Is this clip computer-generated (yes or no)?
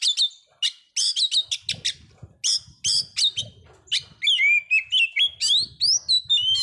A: no